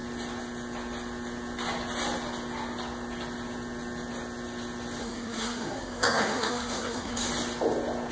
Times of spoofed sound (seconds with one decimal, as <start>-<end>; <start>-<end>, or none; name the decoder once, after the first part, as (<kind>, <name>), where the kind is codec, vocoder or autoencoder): 5.0-7.3 (codec, SNAC)